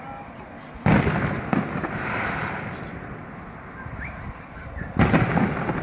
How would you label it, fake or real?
real